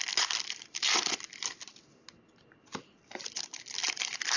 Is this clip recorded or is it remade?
recorded